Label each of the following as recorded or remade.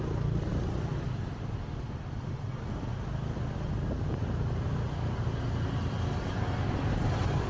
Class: recorded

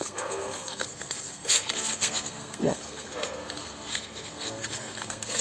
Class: remade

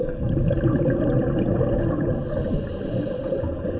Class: recorded